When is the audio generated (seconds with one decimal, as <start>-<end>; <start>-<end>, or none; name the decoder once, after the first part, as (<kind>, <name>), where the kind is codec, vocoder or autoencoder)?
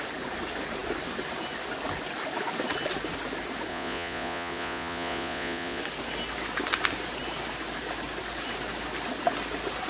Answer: 3.7-5.8 (vocoder, Vocos)